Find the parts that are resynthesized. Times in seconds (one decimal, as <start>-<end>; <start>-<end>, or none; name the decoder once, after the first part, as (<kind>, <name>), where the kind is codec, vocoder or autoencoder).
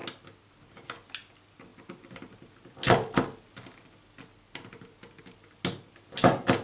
none